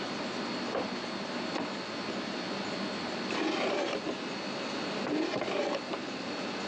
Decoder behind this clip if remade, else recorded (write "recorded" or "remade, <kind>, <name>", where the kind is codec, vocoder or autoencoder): recorded